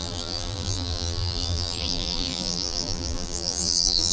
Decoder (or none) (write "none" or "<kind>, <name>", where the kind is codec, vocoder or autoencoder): vocoder, BigVGAN v2